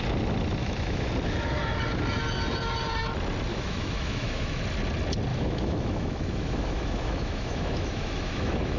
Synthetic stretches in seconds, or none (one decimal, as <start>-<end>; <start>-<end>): 0.6-1.1; 3.5-4.6; 5.3-8.8